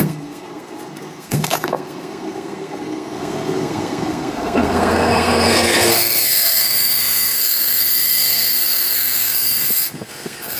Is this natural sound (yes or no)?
no